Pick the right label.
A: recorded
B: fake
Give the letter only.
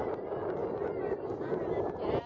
A